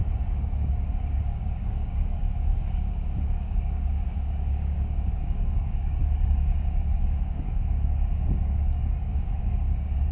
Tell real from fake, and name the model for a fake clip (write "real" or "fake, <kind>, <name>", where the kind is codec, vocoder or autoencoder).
fake, codec, DAC